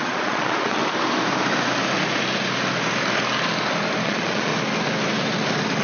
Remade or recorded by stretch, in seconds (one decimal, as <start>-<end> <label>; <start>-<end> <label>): 0.0-0.8 remade; 0.8-4.0 recorded; 4.0-4.5 remade; 4.5-5.8 recorded